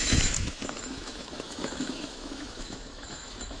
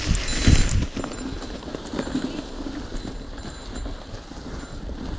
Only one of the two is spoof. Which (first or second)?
first